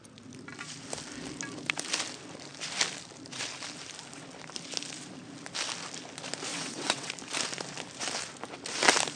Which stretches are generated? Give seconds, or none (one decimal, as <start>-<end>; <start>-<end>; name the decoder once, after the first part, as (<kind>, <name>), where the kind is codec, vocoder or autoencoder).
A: 6.5-7.1 (vocoder, WaveNeXt)